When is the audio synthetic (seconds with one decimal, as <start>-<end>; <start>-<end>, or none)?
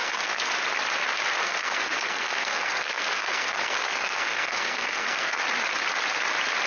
0.0-0.5; 1.4-5.4